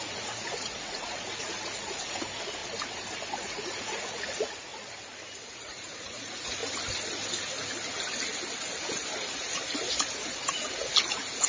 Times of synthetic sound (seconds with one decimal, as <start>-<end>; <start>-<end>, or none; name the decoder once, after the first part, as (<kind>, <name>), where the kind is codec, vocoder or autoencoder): 0.0-2.6 (vocoder, Vocos); 3.4-4.7; 5.5-6.6; 11.1-11.5

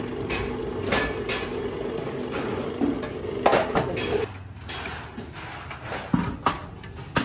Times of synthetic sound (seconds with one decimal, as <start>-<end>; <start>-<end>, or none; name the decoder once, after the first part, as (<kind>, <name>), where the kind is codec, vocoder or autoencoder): none

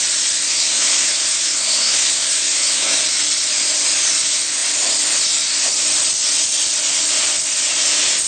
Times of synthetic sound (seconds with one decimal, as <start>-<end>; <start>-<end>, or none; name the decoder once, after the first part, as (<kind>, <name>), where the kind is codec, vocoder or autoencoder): 0.5-3.0 (codec, SNAC)

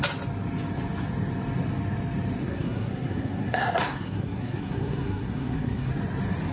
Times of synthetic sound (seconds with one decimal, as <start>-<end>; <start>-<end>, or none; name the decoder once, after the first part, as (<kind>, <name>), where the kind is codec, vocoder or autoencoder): 2.4-5.9 (codec, SNAC)